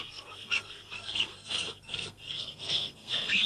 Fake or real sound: fake